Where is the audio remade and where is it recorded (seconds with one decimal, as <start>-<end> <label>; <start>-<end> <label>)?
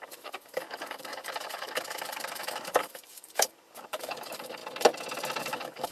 0.0-4.6 remade; 4.6-5.4 recorded; 5.4-5.9 remade